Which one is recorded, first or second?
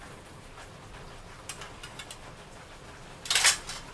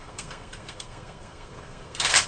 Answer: first